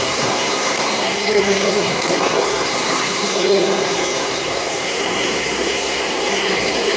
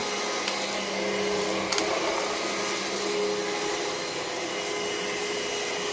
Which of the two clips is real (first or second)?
second